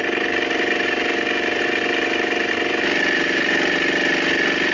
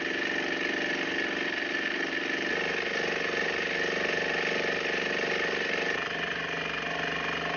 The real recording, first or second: second